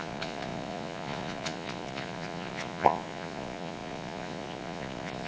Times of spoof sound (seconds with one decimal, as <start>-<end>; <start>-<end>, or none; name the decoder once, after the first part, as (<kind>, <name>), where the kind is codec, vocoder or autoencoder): 0.0-5.3 (vocoder, Vocos)